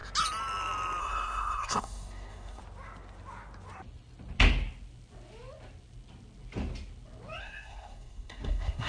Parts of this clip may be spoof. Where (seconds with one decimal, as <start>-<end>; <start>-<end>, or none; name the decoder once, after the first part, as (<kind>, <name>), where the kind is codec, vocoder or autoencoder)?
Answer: 1.0-2.6 (codec, SNAC); 7.4-8.9